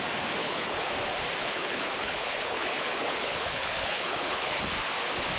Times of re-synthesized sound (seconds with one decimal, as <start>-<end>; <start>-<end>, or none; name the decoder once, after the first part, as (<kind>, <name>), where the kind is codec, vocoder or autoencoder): 0.4-0.9 (codec, HILCodec); 1.4-4.6